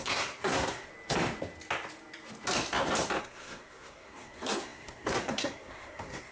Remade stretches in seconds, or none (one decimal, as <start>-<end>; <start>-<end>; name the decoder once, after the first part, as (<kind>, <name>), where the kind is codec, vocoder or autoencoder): 0.0-0.9 (codec, SNAC); 3.2-6.3